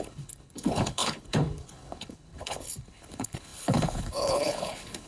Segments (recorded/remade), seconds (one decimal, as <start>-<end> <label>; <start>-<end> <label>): 0.0-5.1 remade